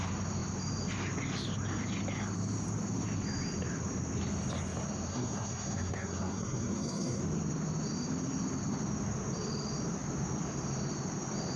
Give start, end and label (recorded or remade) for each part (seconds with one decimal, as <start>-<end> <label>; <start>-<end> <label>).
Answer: 0.0-5.1 recorded; 5.1-7.2 remade; 7.2-11.6 recorded